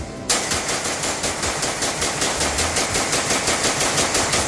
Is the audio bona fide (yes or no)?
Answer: yes